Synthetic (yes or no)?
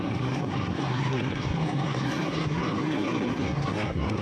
yes